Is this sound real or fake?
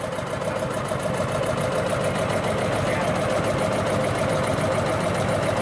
real